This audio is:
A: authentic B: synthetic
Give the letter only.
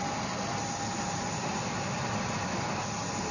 A